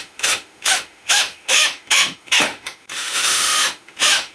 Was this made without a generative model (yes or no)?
no